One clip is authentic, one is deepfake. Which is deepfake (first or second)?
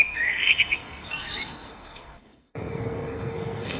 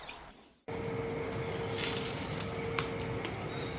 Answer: first